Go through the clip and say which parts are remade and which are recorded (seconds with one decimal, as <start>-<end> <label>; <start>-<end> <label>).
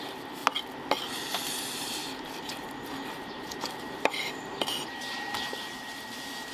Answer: 0.0-0.4 remade; 0.4-1.0 recorded; 1.0-6.5 remade